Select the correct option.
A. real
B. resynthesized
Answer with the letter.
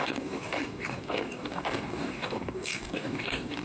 B